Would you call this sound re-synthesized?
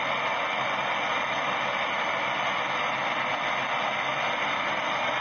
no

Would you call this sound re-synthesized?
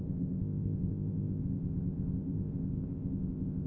yes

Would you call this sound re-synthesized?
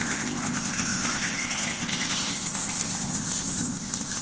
yes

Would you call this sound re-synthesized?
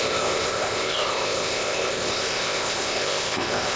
yes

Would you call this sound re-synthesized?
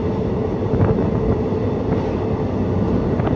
no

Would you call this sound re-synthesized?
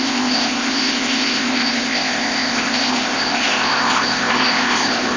yes